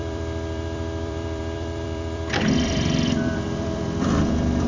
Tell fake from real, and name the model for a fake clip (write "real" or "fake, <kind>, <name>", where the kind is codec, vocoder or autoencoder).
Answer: fake, vocoder, BigVGAN v2